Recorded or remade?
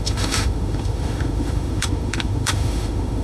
remade